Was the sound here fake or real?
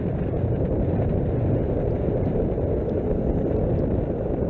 real